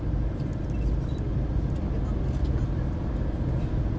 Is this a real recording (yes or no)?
yes